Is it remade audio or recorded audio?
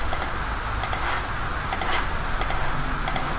recorded